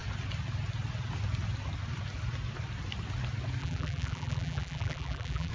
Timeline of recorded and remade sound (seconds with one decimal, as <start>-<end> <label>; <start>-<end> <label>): 0.0-3.6 recorded; 3.6-5.5 remade